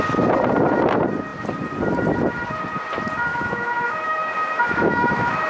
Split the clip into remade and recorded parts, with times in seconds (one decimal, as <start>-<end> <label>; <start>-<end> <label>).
0.0-3.3 recorded; 3.3-5.5 remade